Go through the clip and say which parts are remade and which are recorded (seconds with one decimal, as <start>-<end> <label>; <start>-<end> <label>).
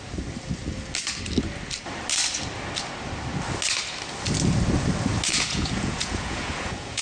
0.0-5.3 recorded; 5.3-7.0 remade